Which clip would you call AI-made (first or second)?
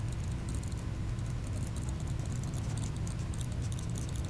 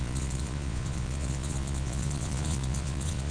second